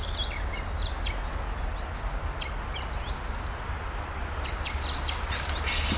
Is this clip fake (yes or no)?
no